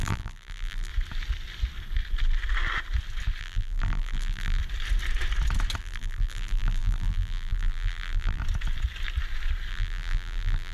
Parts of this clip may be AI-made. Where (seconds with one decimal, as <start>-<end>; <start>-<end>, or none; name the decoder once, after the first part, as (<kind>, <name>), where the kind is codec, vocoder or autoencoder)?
0.0-0.9 (vocoder, BigVGAN v2); 3.4-4.6; 5.8-8.4; 9.7-10.7